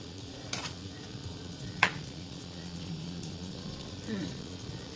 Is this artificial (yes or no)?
yes